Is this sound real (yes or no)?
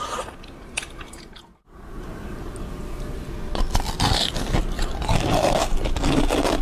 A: yes